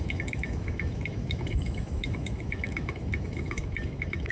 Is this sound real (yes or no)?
no